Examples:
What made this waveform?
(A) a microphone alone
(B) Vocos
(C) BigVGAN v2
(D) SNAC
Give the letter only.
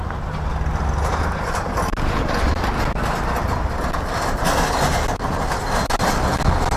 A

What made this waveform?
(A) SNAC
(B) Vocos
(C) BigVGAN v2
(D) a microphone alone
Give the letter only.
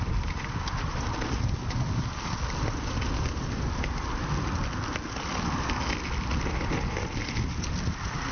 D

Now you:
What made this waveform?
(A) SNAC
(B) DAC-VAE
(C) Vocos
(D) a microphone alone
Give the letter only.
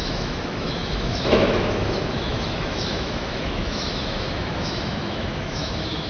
B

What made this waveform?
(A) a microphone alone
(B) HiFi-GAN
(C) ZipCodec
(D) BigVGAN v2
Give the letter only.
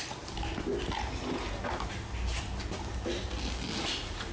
A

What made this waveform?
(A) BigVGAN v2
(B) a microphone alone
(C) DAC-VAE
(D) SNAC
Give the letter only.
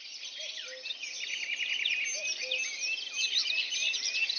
B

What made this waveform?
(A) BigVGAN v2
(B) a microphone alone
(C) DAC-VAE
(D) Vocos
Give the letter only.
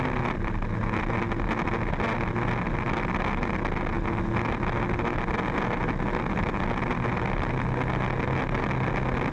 B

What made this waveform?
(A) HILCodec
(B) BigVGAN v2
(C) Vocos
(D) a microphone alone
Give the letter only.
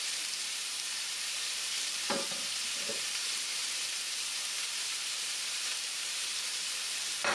B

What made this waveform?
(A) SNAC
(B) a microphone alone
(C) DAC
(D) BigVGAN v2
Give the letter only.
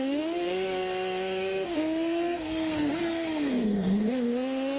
A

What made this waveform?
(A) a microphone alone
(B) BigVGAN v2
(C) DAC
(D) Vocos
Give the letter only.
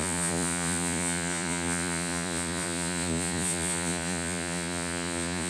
D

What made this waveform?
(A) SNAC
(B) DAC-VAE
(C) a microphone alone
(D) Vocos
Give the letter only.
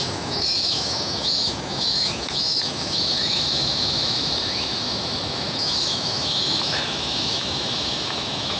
B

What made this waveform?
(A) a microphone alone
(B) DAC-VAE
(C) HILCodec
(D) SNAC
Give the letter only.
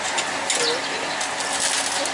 A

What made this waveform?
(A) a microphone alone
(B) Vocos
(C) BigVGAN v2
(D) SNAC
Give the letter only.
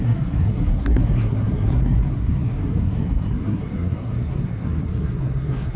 D